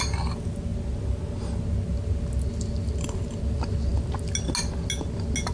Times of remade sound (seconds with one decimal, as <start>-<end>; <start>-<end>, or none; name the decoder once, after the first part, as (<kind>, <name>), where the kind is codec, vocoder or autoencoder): none